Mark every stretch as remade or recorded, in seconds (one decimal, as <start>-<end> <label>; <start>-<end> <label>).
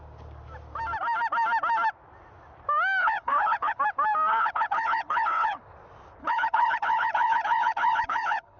0.0-3.0 recorded; 3.0-3.8 remade; 3.8-4.3 recorded; 4.3-5.6 remade; 5.6-6.2 recorded; 6.2-8.6 remade